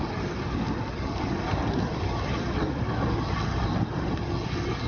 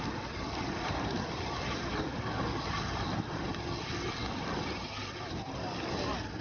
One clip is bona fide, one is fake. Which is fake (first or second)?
second